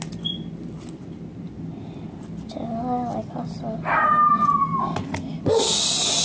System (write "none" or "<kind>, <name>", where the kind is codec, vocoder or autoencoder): none